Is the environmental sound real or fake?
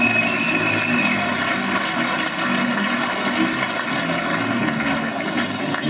real